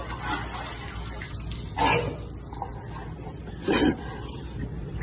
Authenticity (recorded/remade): recorded